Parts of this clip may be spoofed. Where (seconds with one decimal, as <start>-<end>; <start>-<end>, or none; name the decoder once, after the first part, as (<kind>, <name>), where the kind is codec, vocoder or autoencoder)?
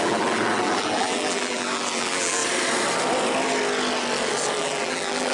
0.0-2.4 (vocoder, BigVGAN v2); 4.6-5.3